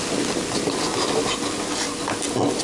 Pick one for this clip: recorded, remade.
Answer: recorded